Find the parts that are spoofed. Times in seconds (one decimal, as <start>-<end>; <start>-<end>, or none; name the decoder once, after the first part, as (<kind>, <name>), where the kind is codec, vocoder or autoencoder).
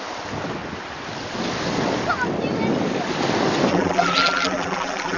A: 3.7-5.2 (vocoder, BigVGAN v2)